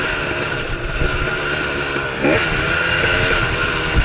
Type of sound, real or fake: real